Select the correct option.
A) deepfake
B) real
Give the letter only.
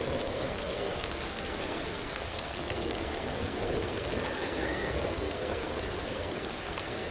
A